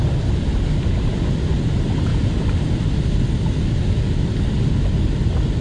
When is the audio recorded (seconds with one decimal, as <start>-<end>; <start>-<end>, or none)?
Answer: 0.0-5.6